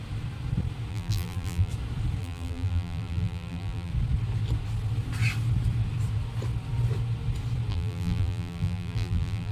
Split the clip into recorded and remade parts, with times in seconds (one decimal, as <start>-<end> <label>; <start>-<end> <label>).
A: 0.0-0.9 recorded; 0.9-1.7 remade; 1.7-2.2 recorded; 2.2-3.9 remade; 3.9-7.7 recorded; 7.7-9.5 remade